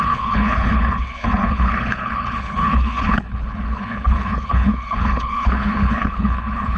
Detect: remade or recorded remade